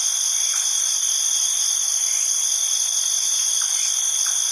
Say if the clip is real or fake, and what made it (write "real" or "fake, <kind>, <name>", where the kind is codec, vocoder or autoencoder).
real